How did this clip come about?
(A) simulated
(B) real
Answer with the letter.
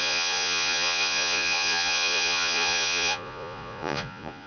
A